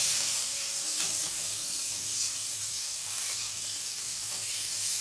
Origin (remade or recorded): remade